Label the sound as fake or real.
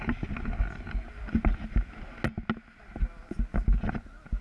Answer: real